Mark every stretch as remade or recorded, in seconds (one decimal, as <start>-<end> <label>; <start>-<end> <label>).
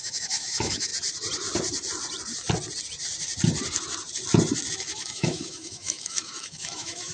0.0-0.9 remade; 0.9-4.7 recorded; 4.7-7.1 remade